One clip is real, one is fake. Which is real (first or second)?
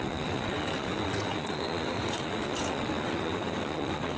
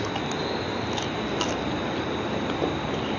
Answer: second